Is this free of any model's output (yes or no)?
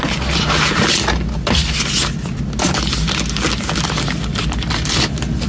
yes